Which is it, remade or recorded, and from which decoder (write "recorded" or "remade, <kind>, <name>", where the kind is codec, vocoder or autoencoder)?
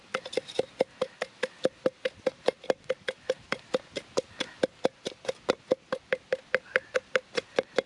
recorded